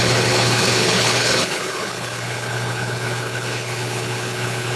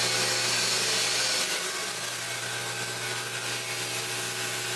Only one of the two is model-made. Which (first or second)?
first